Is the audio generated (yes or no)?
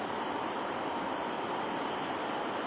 no